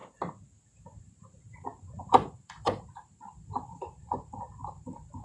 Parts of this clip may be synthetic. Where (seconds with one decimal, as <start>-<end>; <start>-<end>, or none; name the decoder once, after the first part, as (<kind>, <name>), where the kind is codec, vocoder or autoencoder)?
1.0-5.2 (vocoder, BigVGAN v2)